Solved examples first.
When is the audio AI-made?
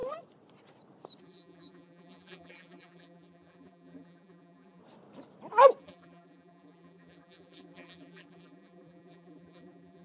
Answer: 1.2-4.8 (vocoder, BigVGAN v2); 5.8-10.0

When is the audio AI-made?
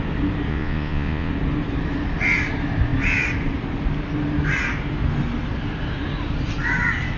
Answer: 0.5-1.3 (vocoder, Vocos)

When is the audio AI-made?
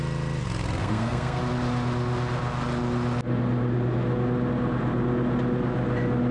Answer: 0.8-1.4 (codec, SNAC)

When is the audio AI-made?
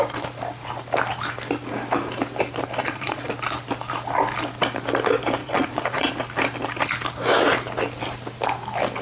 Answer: 2.8-3.3 (vocoder, Vocos); 5.4-6.1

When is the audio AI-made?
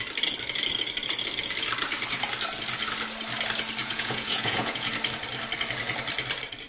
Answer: 3.8-4.9 (vocoder, Vocos)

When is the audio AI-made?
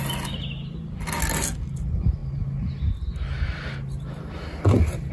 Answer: none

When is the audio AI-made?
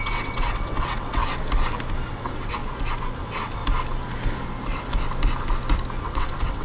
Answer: 0.0-1.2 (vocoder, WaveNeXt); 2.1-2.6; 3.2-3.6; 6.0-6.6